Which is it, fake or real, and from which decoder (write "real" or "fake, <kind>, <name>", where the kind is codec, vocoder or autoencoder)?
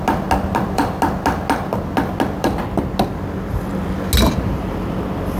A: real